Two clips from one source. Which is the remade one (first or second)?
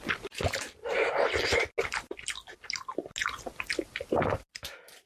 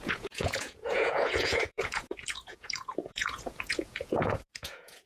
second